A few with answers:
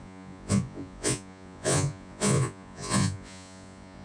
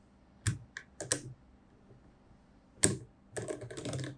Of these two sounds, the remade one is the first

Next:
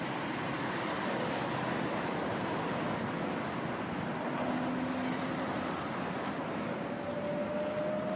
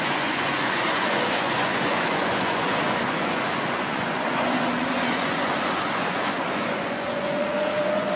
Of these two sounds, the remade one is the second